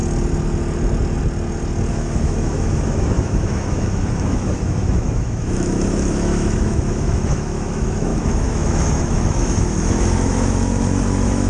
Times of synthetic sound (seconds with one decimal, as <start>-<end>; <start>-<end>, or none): 1.9-11.5

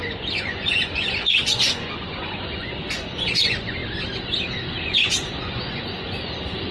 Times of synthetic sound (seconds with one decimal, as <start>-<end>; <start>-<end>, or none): 0.0-3.8; 4.6-6.7

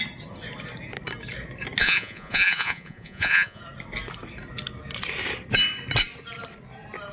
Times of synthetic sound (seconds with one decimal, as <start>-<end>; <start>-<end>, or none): 1.8-3.6

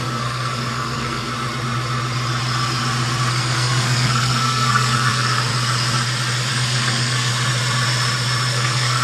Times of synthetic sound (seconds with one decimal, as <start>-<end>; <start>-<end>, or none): 0.0-1.3; 3.3-5.5; 6.5-7.3; 8.5-9.0

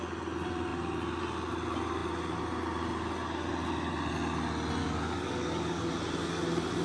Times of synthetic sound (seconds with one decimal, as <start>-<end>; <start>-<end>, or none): 4.8-5.9

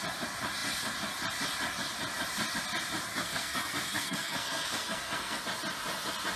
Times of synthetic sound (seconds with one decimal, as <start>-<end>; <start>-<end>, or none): 3.1-5.4